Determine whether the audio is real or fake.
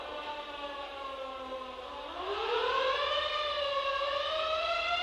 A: real